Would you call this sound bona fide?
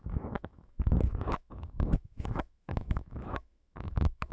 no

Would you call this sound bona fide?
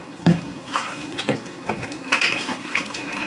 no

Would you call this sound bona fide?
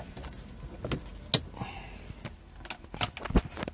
yes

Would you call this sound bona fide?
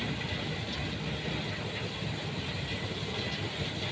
yes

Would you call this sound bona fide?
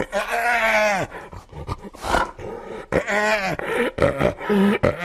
yes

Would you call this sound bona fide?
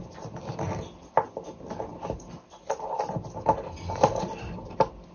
yes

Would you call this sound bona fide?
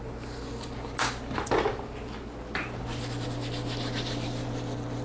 yes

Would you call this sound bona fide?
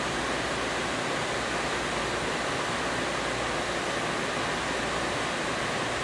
yes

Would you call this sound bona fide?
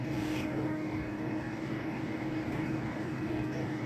no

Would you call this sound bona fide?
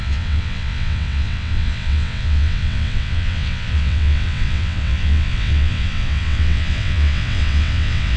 no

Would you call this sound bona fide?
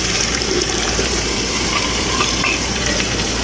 no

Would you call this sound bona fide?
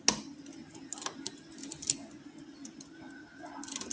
yes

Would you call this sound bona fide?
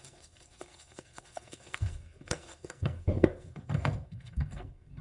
no